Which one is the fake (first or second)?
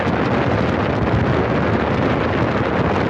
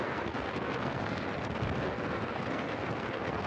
second